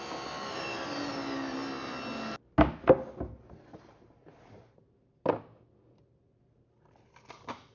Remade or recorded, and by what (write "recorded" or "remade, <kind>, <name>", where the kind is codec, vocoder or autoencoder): recorded